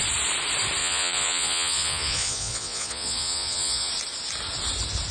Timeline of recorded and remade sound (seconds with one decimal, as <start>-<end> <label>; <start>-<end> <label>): 0.0-0.8 recorded; 0.8-3.9 remade; 3.9-5.1 recorded